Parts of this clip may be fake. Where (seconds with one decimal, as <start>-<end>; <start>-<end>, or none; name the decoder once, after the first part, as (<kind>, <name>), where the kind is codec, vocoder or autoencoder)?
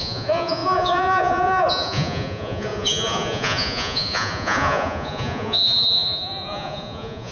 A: 0.0-7.3 (vocoder, Vocos)